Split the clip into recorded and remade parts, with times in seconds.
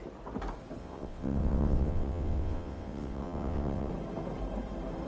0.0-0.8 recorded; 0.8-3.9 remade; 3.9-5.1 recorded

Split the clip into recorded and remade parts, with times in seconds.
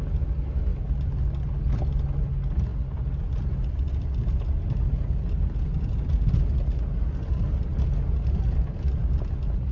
0.0-9.7 recorded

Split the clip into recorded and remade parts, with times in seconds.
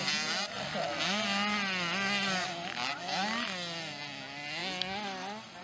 0.0-5.6 recorded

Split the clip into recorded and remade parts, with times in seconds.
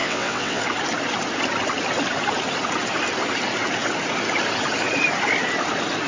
0.0-0.6 remade; 0.6-6.1 recorded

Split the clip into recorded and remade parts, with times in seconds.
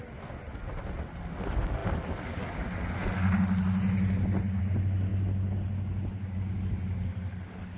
0.0-7.8 recorded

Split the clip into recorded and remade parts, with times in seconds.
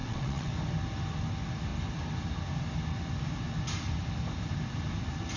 0.0-0.5 remade; 0.5-5.4 recorded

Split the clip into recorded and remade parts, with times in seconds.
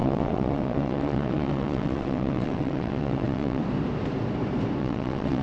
0.0-3.6 remade; 3.6-4.8 recorded; 4.8-5.4 remade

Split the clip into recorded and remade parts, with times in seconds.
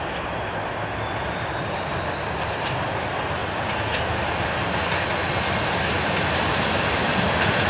0.0-7.7 recorded